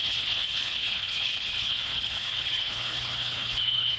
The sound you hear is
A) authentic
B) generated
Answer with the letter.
B